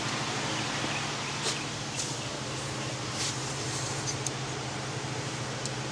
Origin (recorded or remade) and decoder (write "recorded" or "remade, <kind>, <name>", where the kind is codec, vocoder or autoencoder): remade, vocoder, BigVGAN v2